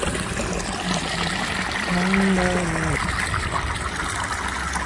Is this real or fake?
real